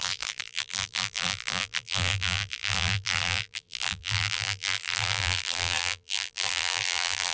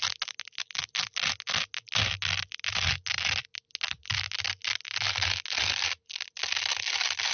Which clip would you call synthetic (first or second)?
first